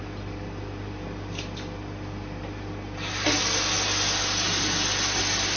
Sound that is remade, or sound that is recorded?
recorded